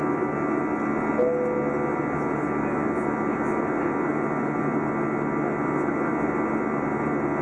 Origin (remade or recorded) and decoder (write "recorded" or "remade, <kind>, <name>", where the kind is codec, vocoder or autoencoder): recorded